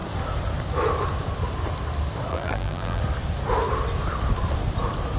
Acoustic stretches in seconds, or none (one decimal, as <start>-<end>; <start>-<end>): 0.0-2.3; 3.0-5.2